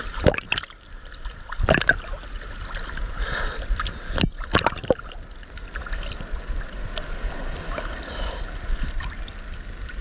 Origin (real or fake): real